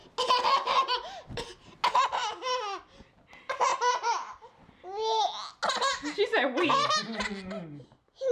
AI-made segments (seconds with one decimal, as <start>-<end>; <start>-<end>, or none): none